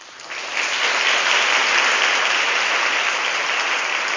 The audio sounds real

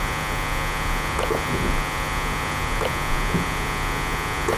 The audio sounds fake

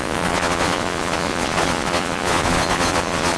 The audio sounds fake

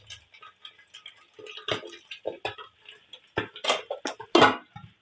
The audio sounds real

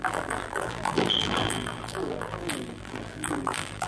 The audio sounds fake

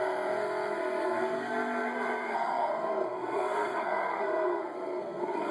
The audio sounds fake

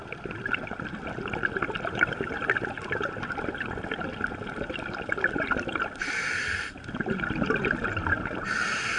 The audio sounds real